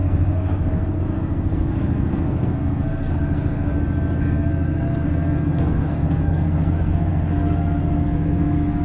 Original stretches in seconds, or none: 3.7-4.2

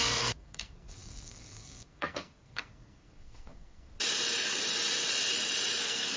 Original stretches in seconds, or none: 3.9-5.8

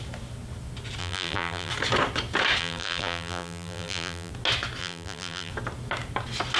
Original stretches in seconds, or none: 0.0-1.0; 1.7-2.6; 4.3-4.8; 5.5-6.6

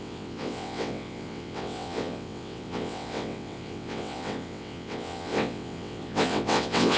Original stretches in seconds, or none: none

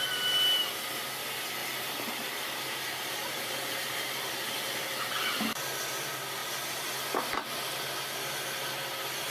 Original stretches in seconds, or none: 0.0-1.6; 5.0-9.3

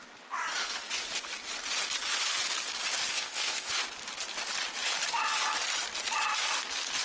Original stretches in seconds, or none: 0.0-3.1; 3.7-7.0

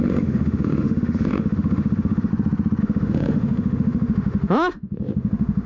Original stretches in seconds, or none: 2.3-2.8